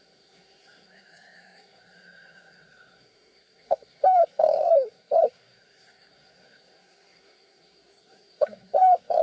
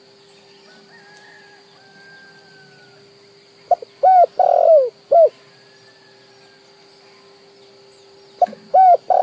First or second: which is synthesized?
first